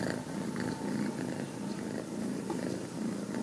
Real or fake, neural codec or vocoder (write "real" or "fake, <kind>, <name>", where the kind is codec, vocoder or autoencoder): real